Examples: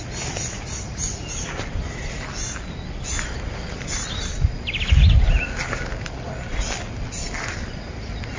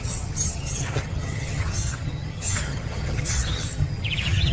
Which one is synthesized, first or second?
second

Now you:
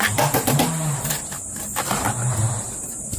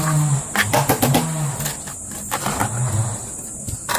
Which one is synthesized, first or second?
first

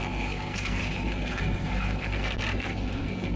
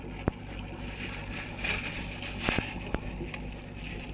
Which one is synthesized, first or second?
first